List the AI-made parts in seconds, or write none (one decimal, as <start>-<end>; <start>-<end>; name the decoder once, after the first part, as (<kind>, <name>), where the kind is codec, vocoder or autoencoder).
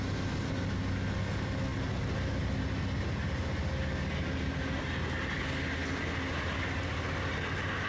none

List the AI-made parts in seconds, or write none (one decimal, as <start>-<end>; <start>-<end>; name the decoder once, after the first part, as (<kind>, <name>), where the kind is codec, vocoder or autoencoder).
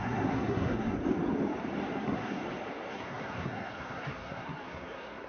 0.0-1.0 (codec, SNAC); 2.0-2.4; 2.9-5.3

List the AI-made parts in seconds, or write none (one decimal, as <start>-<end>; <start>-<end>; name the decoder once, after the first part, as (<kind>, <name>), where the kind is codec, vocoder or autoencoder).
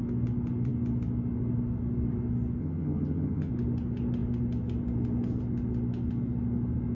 2.6-3.5 (vocoder, HiFi-GAN)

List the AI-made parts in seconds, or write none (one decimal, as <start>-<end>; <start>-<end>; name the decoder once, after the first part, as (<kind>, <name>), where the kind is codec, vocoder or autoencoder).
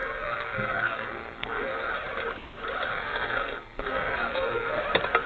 0.0-1.9 (codec, SNAC); 2.9-4.8